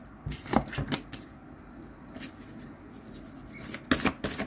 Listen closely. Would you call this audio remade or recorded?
recorded